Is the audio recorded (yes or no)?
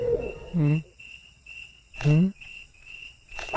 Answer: no